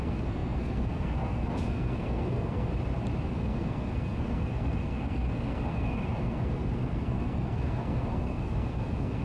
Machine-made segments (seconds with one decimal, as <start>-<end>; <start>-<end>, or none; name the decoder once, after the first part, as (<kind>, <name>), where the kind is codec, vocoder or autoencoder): 0.0-2.7 (codec, SNAC); 3.3-9.2